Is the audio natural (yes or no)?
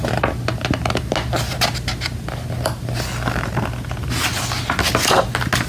yes